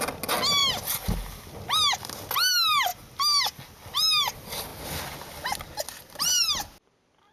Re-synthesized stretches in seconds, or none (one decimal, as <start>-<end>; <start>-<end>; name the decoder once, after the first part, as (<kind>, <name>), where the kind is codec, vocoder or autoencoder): none